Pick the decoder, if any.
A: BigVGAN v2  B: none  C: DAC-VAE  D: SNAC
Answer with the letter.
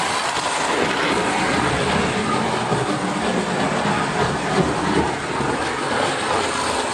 B